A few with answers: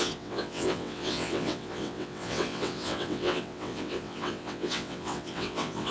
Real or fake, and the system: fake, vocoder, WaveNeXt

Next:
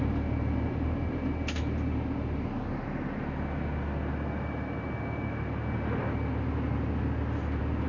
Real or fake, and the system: real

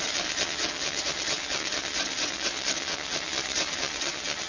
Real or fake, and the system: fake, vocoder, WaveNeXt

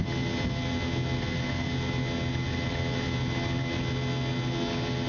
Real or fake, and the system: real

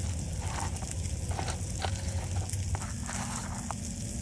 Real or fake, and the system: real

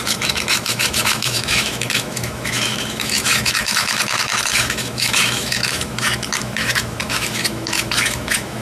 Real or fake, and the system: fake, autoencoder, DAC-VAE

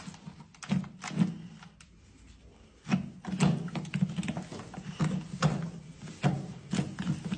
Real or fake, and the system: real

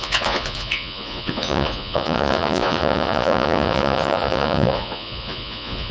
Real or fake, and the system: fake, vocoder, Vocos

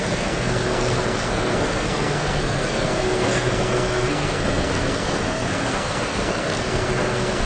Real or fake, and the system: fake, codec, SNAC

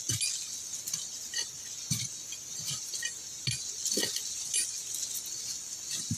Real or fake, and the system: real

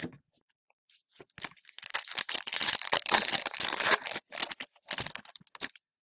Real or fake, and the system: fake, vocoder, BigVGAN v2